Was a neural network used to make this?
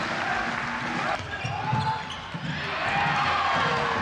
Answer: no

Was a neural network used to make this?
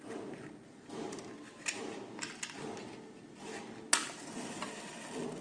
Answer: no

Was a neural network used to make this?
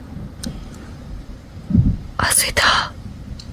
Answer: yes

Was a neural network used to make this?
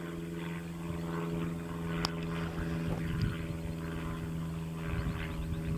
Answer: no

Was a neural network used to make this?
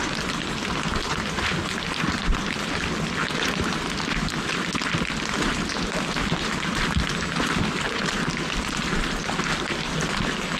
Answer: no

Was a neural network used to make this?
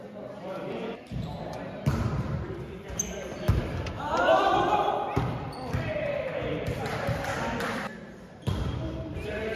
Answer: yes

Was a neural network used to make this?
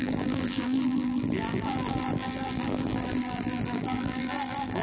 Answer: yes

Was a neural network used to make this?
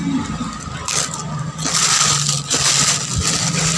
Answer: no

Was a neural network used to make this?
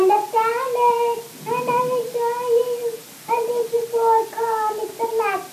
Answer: no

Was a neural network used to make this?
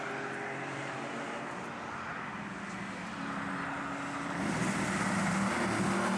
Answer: no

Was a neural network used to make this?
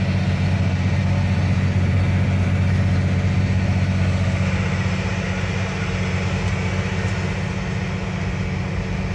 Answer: no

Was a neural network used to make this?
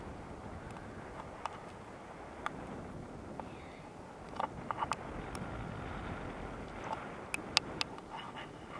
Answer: no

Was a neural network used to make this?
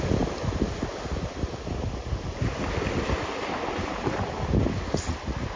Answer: no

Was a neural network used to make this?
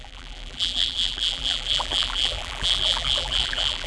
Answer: yes